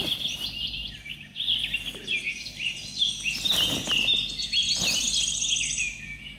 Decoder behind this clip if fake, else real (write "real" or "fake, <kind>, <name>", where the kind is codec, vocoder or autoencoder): real